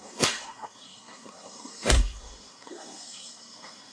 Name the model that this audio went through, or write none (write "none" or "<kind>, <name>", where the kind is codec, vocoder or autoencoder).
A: codec, SNAC